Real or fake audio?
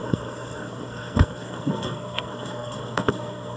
fake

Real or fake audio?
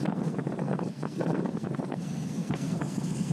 fake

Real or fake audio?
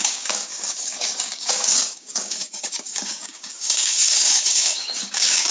fake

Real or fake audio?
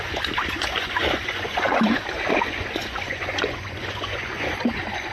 fake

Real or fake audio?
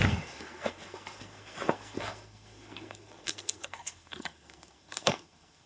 fake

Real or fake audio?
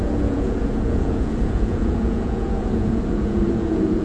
fake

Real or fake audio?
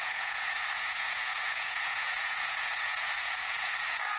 fake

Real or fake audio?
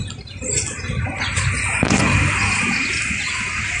real